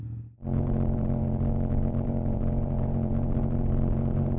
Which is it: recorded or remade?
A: remade